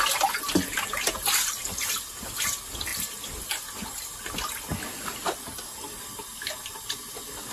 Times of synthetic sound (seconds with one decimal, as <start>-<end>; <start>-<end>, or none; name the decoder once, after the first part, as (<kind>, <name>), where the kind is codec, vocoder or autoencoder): none